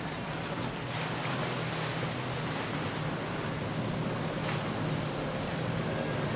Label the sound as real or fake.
real